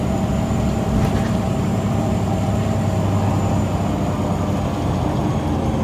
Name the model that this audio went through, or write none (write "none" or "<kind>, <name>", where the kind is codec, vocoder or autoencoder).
none